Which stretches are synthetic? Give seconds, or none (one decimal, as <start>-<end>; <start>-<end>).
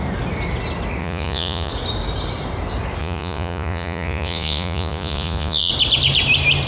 1.0-1.7; 3.0-5.7